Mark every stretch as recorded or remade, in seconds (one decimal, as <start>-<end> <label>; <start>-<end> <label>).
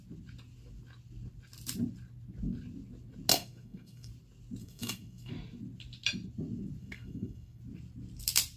0.0-3.3 recorded; 3.3-4.1 remade; 4.1-4.6 recorded; 4.6-5.3 remade; 5.3-6.8 recorded; 6.8-7.6 remade; 7.6-8.6 recorded